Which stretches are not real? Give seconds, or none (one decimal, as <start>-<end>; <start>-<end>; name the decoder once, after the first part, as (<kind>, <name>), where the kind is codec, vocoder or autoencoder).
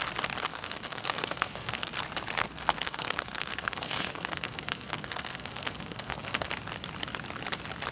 0.5-1.9 (codec, SNAC); 2.4-6.5